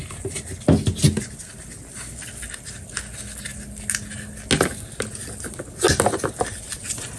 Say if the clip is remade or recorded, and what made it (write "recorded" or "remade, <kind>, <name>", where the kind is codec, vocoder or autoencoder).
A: recorded